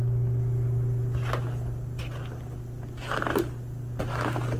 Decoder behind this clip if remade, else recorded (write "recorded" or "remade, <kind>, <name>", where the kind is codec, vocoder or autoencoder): recorded